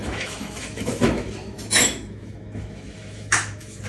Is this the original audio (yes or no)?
no